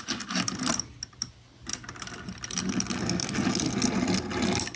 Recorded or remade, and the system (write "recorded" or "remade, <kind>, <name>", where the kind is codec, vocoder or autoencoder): recorded